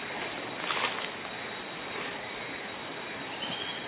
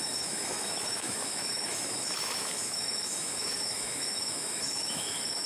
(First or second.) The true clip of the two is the first